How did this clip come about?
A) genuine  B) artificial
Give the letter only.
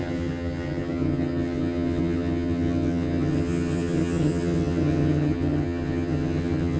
B